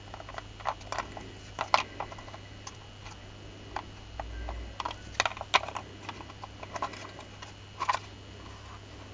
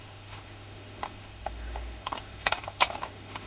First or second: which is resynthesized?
second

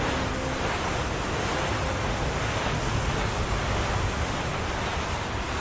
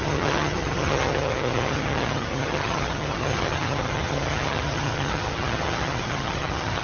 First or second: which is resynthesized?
second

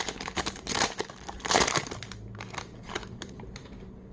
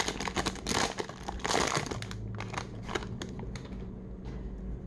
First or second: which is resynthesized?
first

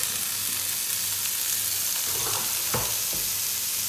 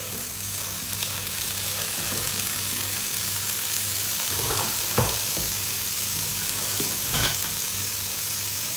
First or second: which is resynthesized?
second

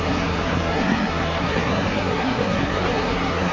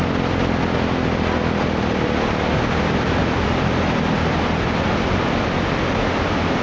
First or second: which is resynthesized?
first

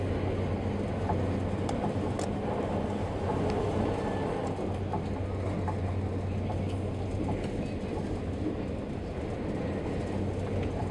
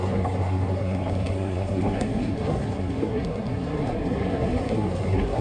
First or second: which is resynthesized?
second